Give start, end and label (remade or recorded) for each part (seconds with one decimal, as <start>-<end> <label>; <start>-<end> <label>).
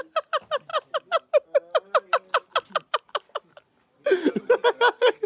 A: 0.0-5.3 recorded